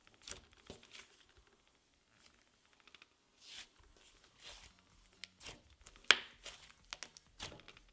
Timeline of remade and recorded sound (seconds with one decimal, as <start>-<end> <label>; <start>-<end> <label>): 0.0-7.9 recorded